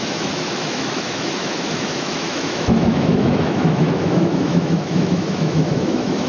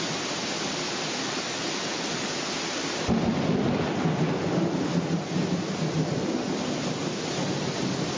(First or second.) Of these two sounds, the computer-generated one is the first